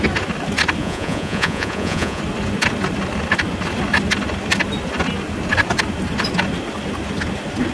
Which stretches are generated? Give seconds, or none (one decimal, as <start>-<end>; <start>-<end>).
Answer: 0.8-2.2